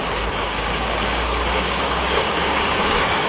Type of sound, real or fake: fake